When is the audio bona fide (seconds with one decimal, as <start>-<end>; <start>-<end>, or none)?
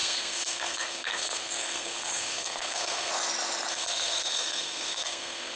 3.1-3.7